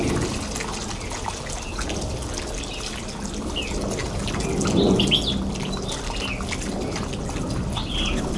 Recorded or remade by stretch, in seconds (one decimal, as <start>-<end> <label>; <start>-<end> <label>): 0.0-8.4 recorded